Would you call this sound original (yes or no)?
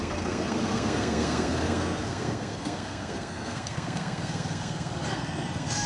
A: no